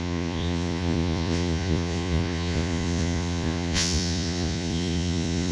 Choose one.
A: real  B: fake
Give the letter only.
B